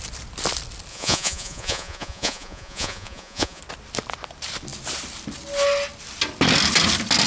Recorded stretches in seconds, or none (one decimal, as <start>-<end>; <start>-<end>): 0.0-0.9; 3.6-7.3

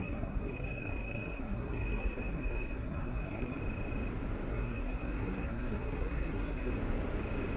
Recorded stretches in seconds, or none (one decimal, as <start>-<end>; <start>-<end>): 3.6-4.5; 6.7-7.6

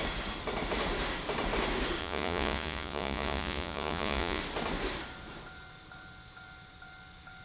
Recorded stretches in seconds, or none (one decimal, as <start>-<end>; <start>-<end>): 0.0-2.0; 4.4-7.4

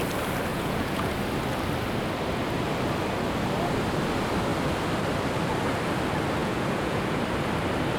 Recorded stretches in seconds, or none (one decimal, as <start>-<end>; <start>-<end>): 0.0-0.5; 1.1-6.4; 7.2-8.0

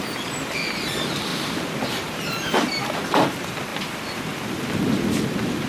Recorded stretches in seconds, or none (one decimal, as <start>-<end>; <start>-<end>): 0.0-5.7